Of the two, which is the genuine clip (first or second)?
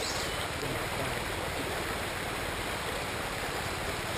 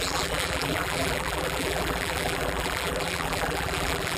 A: first